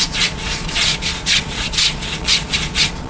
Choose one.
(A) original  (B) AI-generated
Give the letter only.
B